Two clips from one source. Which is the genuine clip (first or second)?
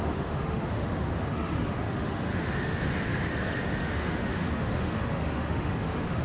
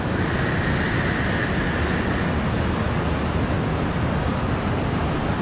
second